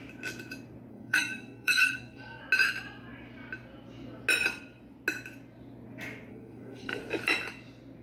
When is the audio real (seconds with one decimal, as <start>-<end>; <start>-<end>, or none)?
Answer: 0.0-0.9; 2.4-6.3; 7.0-8.0